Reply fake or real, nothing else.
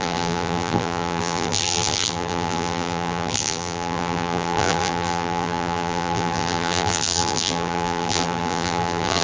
fake